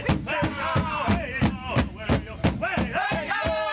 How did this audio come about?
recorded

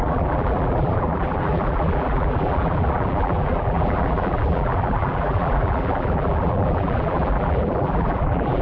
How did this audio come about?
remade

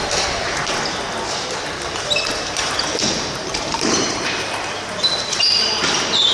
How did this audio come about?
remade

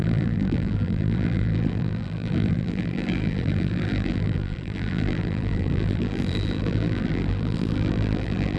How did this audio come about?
remade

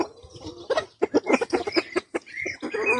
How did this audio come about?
recorded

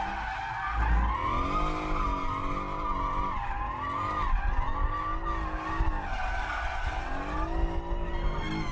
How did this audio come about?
recorded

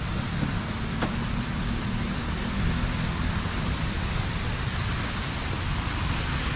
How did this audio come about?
recorded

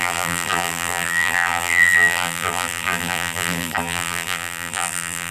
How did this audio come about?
remade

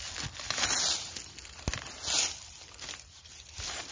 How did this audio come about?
recorded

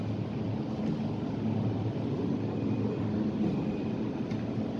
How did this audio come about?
recorded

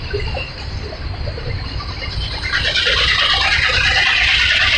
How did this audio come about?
recorded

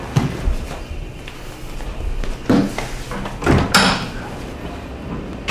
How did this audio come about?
recorded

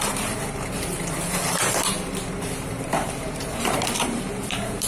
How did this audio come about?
remade